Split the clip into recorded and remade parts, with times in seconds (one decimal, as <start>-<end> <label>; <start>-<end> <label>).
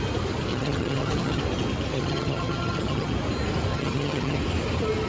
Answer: 0.0-0.5 recorded; 0.5-1.4 remade; 1.4-1.9 recorded; 1.9-3.1 remade; 3.1-3.7 recorded; 3.7-4.4 remade; 4.4-5.1 recorded